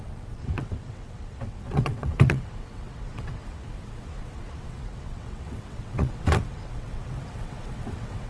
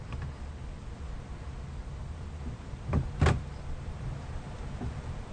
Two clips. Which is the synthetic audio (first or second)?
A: first